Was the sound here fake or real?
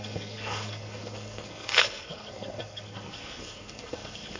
fake